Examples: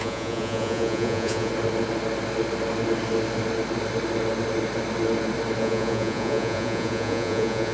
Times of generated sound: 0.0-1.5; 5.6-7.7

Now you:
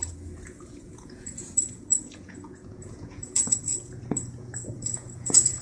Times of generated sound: 0.0-5.6